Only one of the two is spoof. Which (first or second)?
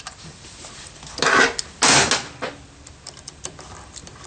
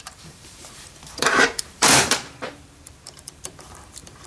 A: second